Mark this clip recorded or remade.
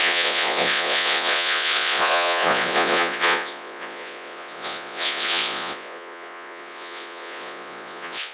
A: remade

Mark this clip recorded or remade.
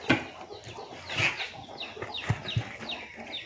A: recorded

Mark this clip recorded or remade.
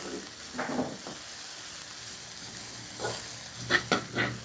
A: recorded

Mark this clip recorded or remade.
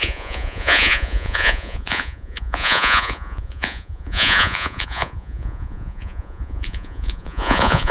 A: remade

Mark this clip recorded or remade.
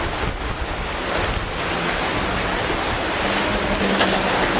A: recorded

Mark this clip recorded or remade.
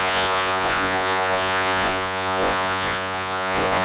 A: remade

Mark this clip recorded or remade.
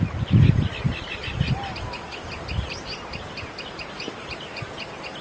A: recorded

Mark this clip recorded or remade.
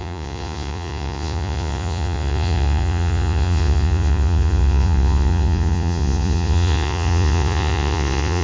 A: remade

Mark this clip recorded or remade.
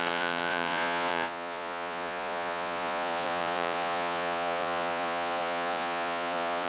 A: remade